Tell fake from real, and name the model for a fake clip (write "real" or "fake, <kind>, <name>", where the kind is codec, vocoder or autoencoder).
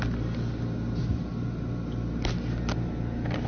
real